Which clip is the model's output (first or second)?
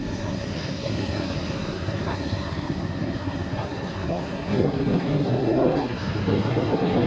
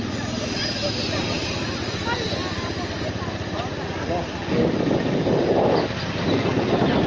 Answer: first